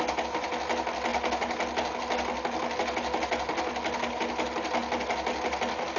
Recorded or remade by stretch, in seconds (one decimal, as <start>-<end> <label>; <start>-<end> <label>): 0.0-6.0 recorded